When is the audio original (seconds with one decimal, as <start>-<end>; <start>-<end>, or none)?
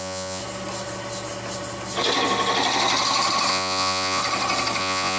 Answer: 0.4-3.5; 4.2-4.8